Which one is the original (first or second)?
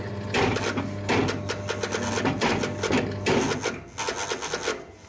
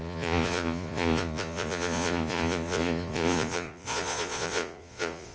first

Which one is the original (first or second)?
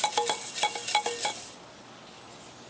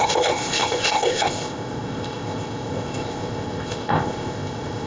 first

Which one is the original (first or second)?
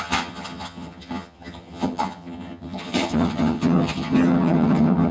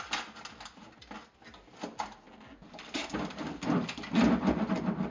second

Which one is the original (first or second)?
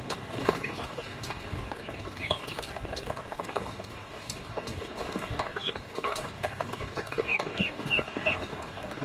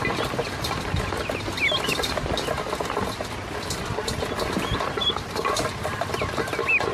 second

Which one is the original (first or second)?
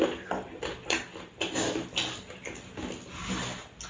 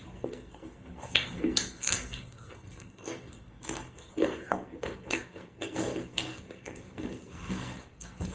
first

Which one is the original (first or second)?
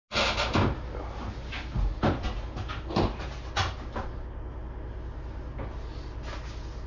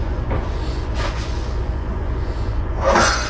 first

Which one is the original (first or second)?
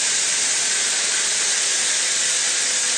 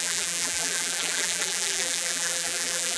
first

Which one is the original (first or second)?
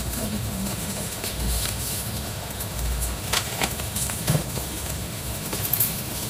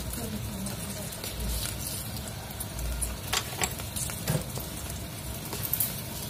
second